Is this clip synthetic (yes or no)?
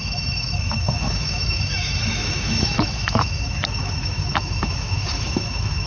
yes